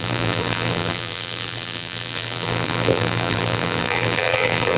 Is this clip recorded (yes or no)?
no